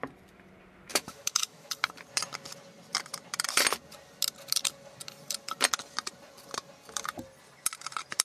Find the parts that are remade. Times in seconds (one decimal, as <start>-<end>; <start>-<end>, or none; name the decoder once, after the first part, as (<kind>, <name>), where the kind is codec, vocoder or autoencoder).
0.9-1.7 (autoencoder, DAC-VAE)